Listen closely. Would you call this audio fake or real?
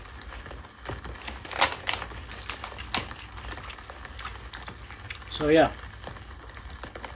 real